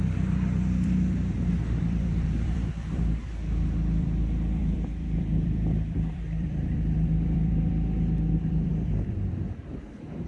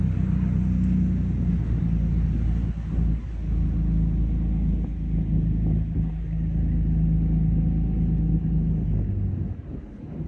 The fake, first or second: first